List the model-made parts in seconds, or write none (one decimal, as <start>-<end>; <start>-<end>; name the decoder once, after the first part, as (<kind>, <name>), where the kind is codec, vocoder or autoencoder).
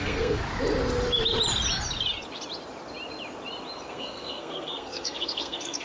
0.0-0.4 (codec, SNAC); 3.9-5.8